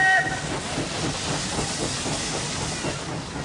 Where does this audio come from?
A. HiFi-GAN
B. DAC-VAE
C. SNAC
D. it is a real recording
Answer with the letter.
D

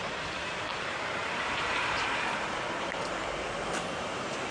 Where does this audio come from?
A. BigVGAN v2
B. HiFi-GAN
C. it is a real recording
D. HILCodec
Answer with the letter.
A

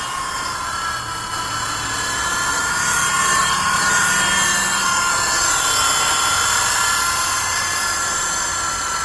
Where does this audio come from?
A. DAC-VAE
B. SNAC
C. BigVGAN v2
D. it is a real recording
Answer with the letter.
D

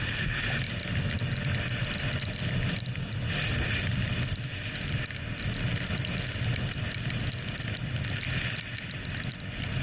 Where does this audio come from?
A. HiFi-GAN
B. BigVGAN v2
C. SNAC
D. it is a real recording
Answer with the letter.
D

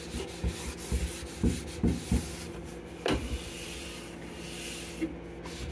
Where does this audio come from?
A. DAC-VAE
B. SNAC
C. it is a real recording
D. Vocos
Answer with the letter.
C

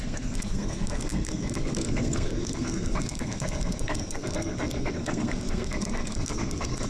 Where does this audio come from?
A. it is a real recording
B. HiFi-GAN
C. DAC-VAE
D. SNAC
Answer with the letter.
D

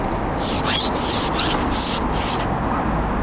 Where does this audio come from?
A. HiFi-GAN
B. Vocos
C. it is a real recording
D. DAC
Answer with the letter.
C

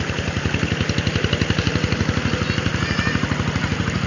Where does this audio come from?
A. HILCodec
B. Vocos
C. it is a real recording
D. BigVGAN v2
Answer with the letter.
C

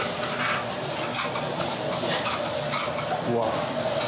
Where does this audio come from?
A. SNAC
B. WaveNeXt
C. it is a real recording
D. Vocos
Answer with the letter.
C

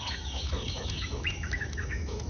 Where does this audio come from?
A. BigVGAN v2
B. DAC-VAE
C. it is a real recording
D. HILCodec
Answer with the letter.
B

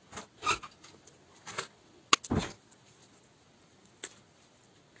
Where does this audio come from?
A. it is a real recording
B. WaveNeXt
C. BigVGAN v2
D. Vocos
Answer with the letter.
A